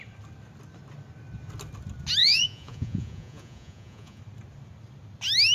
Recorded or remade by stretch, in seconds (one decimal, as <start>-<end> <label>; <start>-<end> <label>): 0.0-2.2 recorded; 2.2-4.2 remade; 4.2-5.5 recorded